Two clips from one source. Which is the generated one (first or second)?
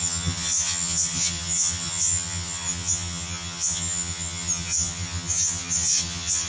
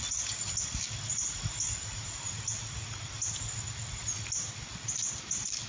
first